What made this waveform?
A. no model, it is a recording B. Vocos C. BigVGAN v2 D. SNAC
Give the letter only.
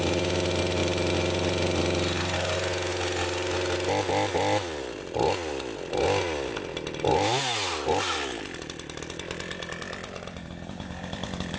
A